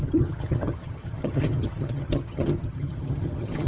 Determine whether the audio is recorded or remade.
remade